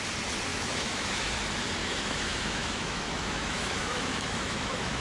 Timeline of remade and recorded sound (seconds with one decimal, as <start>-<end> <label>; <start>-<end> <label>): 0.0-0.5 recorded; 0.5-1.3 remade; 1.3-1.8 recorded; 1.8-5.0 remade